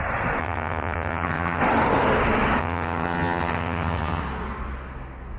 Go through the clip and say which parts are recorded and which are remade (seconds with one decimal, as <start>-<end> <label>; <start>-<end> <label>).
0.0-0.4 recorded; 0.4-1.6 remade; 1.6-2.6 recorded; 2.6-4.2 remade; 4.2-5.4 recorded